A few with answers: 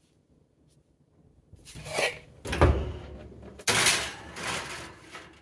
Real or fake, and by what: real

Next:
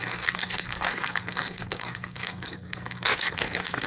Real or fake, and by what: fake, codec, SNAC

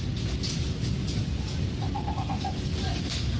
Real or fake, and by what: real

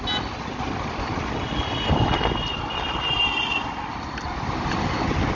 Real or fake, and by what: real